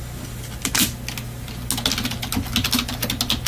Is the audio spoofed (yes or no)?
no